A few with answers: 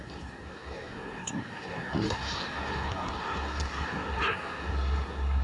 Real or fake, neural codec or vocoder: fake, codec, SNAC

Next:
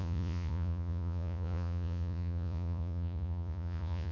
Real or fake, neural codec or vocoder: fake, vocoder, Vocos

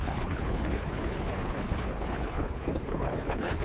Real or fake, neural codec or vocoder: fake, codec, HILCodec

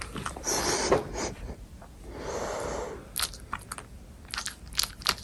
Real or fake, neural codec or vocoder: real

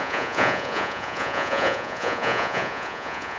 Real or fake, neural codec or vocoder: fake, vocoder, Vocos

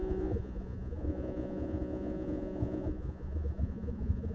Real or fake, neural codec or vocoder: fake, vocoder, Vocos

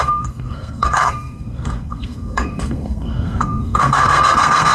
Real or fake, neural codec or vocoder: fake, codec, SNAC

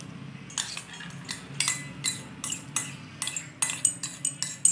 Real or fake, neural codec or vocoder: real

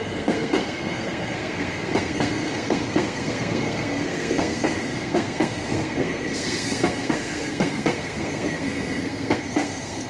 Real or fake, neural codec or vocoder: fake, codec, SNAC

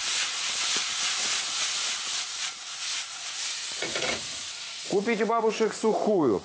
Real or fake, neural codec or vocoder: fake, vocoder, Vocos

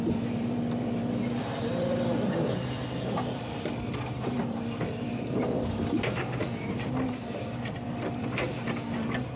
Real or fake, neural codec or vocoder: fake, vocoder, BigVGAN v2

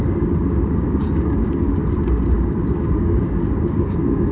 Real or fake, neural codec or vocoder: fake, codec, DAC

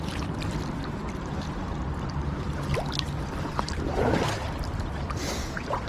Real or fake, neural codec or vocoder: fake, vocoder, BigVGAN v2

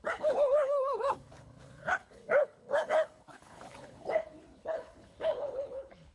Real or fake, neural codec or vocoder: fake, codec, HILCodec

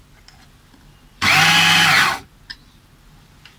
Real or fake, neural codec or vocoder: real